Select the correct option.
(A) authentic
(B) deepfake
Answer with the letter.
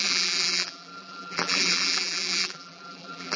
B